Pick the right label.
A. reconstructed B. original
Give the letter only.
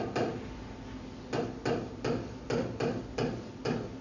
B